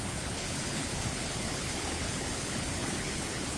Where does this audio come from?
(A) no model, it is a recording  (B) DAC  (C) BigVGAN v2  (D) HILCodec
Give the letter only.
D